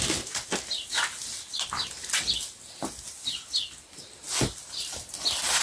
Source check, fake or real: real